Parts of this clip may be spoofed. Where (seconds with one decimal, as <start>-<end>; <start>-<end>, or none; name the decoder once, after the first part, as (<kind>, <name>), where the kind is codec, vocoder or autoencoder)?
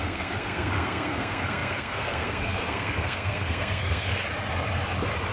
0.0-4.1 (codec, SNAC)